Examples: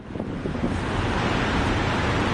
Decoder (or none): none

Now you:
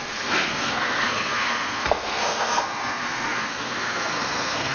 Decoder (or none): codec, SNAC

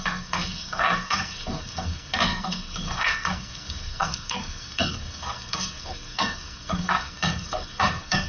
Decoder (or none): codec, SNAC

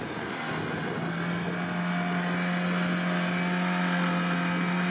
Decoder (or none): none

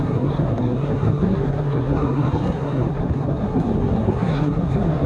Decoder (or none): codec, SNAC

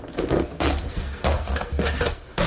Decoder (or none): codec, SNAC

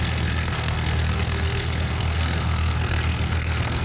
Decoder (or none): codec, SNAC